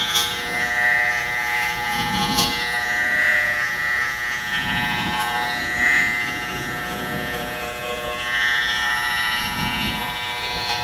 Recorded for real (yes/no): no